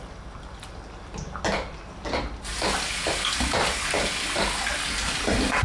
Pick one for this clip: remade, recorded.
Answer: recorded